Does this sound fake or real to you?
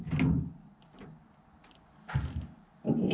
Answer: real